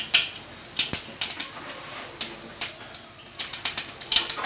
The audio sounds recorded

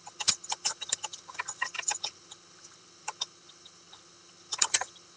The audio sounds remade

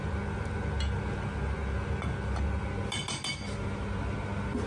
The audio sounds recorded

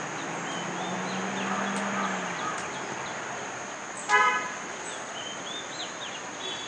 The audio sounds recorded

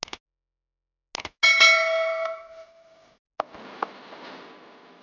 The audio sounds recorded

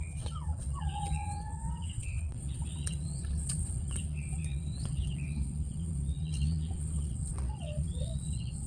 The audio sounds remade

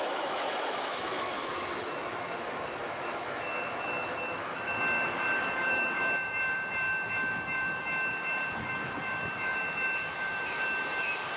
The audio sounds remade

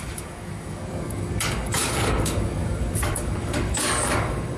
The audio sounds remade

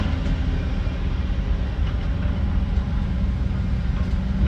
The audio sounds recorded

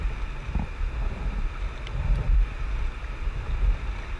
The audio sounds recorded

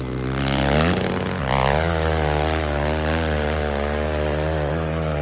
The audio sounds recorded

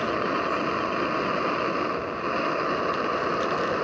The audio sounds recorded